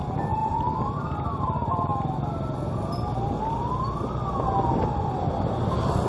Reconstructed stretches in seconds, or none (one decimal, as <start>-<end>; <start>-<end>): none